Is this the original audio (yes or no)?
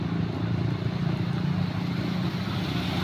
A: yes